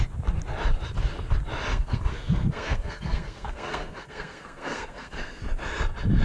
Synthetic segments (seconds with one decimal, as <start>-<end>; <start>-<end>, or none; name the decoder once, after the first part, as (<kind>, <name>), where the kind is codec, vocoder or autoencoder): 1.7-5.4 (codec, SNAC)